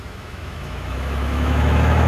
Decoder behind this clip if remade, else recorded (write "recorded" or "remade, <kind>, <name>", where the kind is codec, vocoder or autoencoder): remade, autoencoder, DAC-VAE